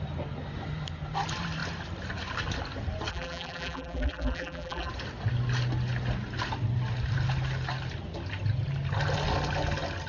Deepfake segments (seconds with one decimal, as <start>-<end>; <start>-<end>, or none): 3.1-4.9